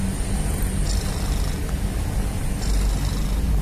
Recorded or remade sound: recorded